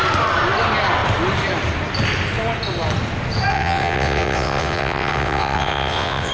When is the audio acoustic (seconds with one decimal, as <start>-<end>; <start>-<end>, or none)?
0.0-3.5